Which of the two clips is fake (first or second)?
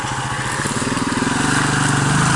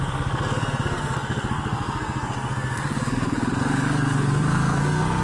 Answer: second